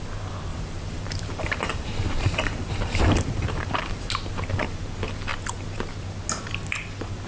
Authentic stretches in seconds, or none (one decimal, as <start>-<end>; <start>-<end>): 0.0-0.5; 4.1-7.3